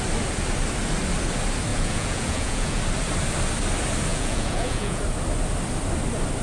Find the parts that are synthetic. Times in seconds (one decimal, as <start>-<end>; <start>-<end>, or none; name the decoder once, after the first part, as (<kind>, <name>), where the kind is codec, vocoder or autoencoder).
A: 1.7-2.8 (vocoder, Vocos); 4.1-5.0